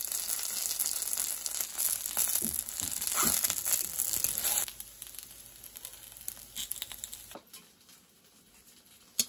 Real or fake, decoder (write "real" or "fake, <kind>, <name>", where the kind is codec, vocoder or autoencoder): real